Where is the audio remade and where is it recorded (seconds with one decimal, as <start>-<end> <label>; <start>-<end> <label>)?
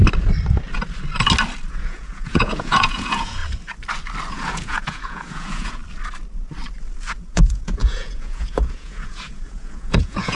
0.0-1.7 recorded; 1.7-3.4 remade; 3.4-4.3 recorded; 4.3-5.8 remade; 5.8-7.2 recorded; 7.2-10.3 remade